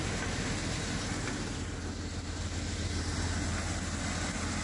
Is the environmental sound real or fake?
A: real